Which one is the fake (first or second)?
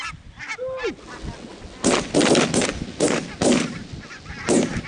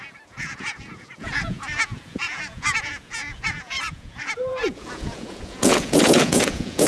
second